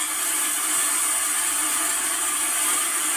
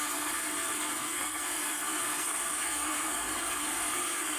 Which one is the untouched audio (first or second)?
first